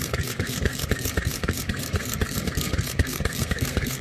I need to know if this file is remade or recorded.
remade